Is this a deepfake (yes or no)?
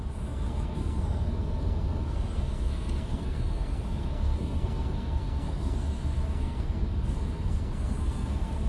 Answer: yes